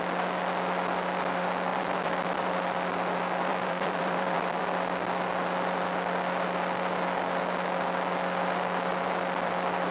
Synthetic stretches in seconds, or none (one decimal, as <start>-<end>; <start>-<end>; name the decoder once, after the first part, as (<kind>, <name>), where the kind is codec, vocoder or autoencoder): 1.7-2.5 (vocoder, BigVGAN v2); 3.5-4.6